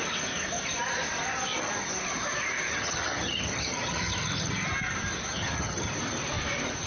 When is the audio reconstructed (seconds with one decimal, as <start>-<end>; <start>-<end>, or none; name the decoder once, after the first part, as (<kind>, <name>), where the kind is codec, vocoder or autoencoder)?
2.7-4.5 (vocoder, HiFi-GAN); 5.3-5.9